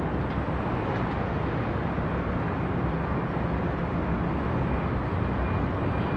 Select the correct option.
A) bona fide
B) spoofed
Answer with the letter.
A